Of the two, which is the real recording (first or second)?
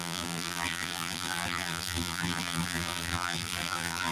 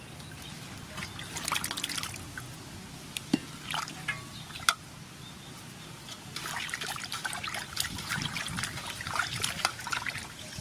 second